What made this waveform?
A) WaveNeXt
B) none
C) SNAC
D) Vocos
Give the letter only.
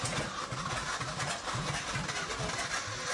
B